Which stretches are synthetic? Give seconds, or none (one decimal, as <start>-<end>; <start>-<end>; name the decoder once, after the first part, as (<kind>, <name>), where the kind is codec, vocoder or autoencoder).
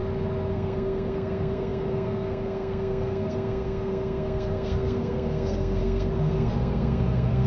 0.5-7.5 (codec, SNAC)